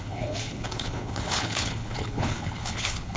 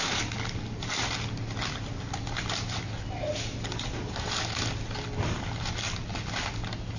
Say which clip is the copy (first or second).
first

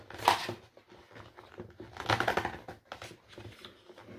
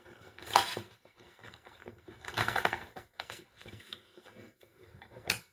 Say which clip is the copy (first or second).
second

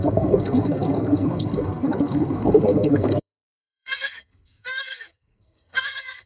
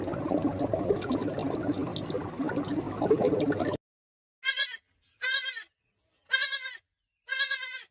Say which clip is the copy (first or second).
first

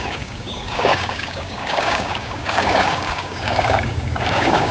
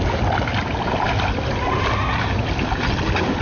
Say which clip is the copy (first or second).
first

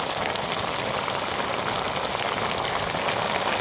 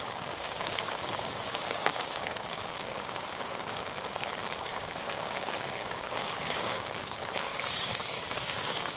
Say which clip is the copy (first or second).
second